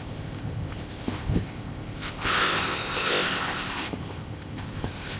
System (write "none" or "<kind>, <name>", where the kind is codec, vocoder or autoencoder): codec, ZipCodec